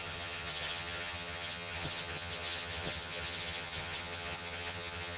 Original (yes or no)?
no